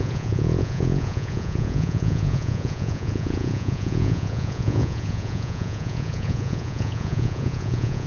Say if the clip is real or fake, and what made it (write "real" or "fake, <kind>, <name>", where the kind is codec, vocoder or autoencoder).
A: fake, vocoder, Vocos